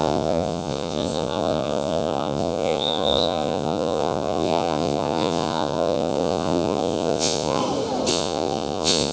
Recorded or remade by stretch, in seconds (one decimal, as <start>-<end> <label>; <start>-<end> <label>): 0.0-7.6 remade; 7.6-8.1 recorded; 8.1-9.1 remade